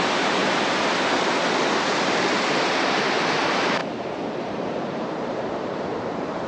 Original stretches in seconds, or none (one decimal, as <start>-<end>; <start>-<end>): 0.4-2.4; 3.8-4.4